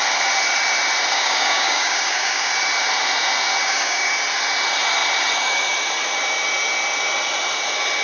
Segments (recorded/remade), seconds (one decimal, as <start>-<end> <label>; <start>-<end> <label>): 0.0-1.1 recorded; 1.1-2.5 remade; 2.5-3.6 recorded; 3.6-4.1 remade; 4.1-8.0 recorded